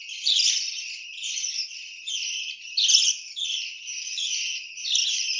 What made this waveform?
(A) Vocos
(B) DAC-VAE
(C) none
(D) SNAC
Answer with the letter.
C